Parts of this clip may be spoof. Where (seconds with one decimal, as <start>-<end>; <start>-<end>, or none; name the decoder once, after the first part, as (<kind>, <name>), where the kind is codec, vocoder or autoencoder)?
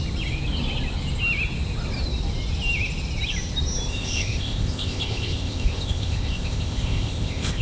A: 3.9-7.6 (codec, ZipCodec)